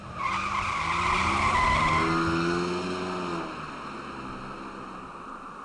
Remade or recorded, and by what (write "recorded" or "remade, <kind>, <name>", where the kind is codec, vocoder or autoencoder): recorded